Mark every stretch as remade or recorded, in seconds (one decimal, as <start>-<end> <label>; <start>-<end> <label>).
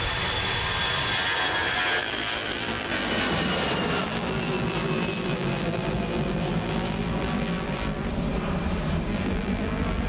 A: 0.0-2.0 recorded; 2.0-3.1 remade; 3.1-4.0 recorded; 4.0-8.1 remade; 8.1-9.1 recorded; 9.1-10.1 remade